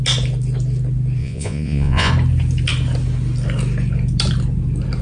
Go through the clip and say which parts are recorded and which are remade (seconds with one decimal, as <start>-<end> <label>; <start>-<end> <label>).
0.0-1.2 recorded; 1.2-2.1 remade; 2.1-5.0 recorded